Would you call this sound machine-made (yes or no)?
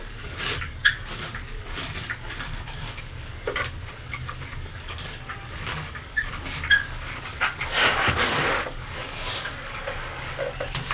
yes